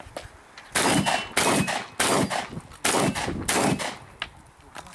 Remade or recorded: recorded